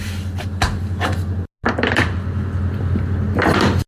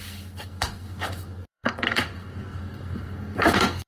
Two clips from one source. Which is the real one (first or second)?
first